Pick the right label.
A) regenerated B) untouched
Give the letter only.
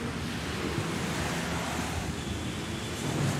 B